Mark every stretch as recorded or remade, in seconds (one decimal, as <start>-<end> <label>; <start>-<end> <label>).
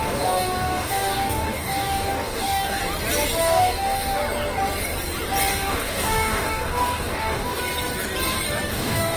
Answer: 0.0-2.8 remade; 2.8-3.4 recorded; 3.4-4.2 remade; 4.2-5.5 recorded; 5.5-7.6 remade; 7.6-8.7 recorded; 8.7-9.2 remade